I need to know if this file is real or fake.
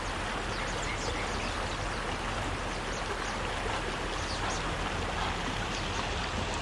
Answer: real